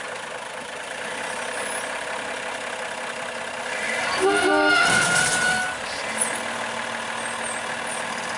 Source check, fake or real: real